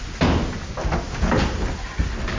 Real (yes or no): yes